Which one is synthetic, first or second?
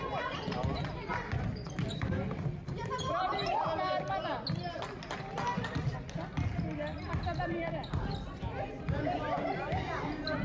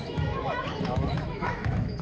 second